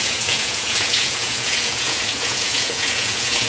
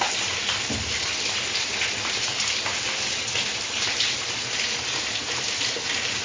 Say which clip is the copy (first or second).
first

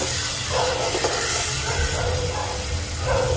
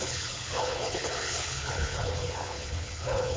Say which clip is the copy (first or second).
second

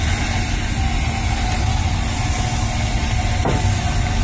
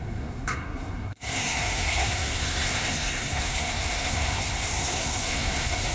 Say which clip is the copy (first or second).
second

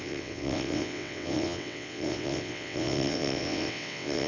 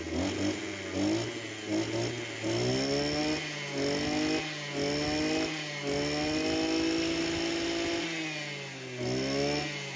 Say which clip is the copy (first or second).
first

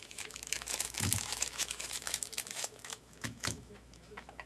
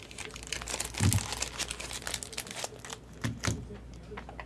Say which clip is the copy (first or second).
first